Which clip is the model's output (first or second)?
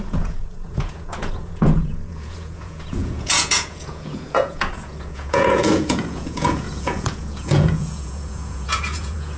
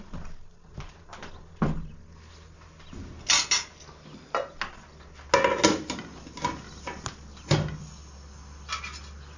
first